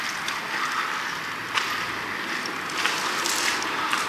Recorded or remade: recorded